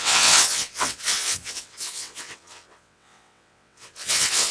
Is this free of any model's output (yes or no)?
no